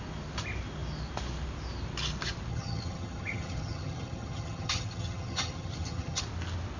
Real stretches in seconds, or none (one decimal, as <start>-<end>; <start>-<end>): 0.0-2.5; 6.2-6.8